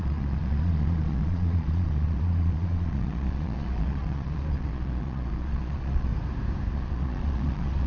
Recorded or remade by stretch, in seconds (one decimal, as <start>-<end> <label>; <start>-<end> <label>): 0.0-6.1 remade; 6.1-6.7 recorded; 6.7-7.9 remade